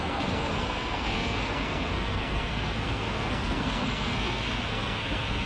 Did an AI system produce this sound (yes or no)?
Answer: yes